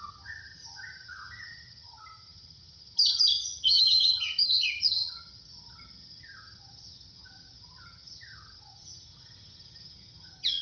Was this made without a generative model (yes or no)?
no